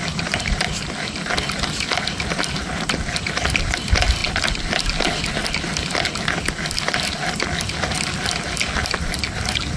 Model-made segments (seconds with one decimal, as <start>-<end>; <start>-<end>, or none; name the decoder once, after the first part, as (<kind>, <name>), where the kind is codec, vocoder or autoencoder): none